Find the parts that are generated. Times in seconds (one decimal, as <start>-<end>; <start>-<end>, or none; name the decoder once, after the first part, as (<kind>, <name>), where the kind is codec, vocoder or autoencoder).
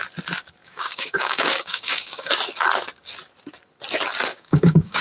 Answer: 0.6-2.3 (codec, DAC); 4.3-5.0